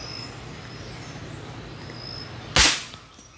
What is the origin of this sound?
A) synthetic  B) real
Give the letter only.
B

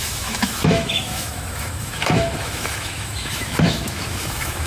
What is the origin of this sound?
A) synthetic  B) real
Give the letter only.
A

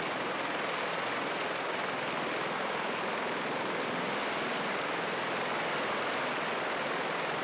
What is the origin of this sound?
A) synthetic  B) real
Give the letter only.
B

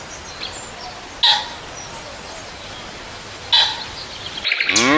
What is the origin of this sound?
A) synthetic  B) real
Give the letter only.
B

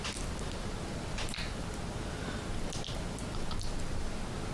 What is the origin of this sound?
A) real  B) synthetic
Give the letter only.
A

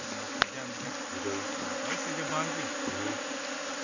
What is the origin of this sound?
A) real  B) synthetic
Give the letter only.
A